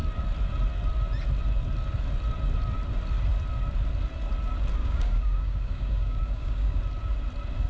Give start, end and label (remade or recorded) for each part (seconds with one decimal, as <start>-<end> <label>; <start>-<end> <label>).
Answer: 0.0-4.8 recorded; 4.8-6.8 remade; 6.8-7.7 recorded